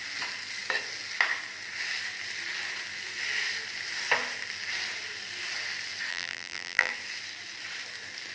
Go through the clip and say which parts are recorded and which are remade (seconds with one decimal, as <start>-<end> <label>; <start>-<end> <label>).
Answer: 0.0-6.1 recorded; 6.1-6.9 remade; 6.9-8.3 recorded